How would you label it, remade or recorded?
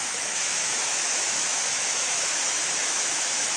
remade